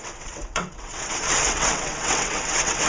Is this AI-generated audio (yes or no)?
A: yes